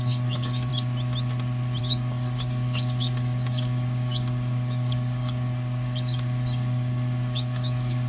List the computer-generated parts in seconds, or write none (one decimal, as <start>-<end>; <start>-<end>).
0.0-0.7; 1.8-8.1

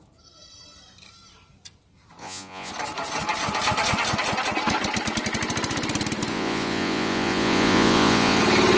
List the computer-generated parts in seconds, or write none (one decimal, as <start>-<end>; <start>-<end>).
2.2-2.7; 6.3-8.4

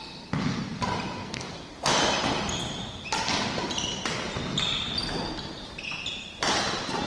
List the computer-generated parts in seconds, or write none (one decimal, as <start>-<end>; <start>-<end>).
1.2-1.9

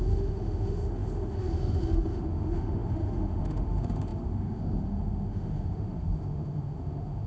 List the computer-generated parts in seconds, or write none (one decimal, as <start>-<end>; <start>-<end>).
0.0-7.3

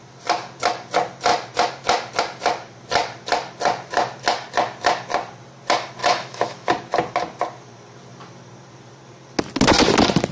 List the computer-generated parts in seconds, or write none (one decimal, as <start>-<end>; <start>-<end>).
6.0-6.7